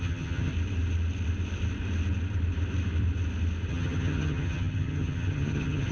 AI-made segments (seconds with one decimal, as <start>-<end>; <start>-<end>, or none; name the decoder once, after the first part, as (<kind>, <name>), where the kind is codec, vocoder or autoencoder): 0.0-0.5 (vocoder, HiFi-GAN); 3.7-5.9